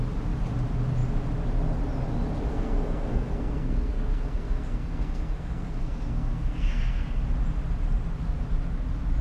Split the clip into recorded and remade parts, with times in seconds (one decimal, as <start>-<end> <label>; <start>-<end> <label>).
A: 0.0-2.5 recorded; 2.5-7.2 remade; 7.2-9.2 recorded